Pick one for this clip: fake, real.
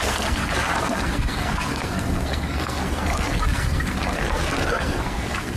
fake